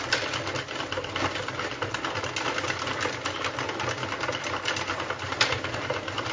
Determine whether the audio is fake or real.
real